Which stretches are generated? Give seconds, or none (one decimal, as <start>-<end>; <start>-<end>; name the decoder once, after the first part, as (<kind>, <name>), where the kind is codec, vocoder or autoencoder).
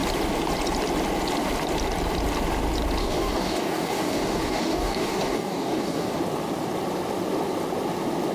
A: 3.0-6.2 (codec, DAC)